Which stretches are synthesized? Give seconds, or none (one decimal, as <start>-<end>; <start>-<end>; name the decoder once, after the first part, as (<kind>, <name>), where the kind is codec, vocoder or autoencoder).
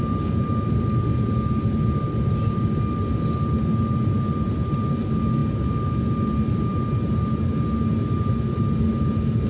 none